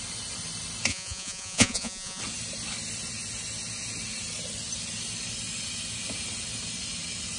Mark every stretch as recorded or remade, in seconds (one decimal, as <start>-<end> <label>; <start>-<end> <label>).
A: 0.0-0.9 recorded; 0.9-2.2 remade; 2.2-7.4 recorded